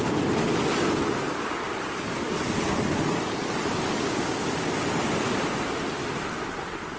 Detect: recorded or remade recorded